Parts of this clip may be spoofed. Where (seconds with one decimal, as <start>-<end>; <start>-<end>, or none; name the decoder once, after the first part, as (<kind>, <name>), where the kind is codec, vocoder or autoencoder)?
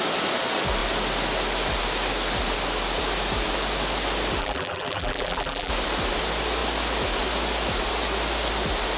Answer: 4.4-5.7 (vocoder, BigVGAN v2)